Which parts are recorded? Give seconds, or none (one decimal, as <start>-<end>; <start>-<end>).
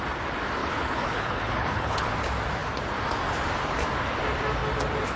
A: 0.0-0.6; 2.1-5.2